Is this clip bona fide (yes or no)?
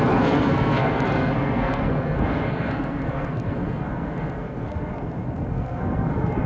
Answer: no